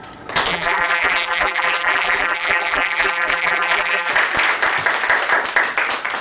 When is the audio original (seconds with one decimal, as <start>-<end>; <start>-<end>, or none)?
0.0-0.5; 4.1-6.2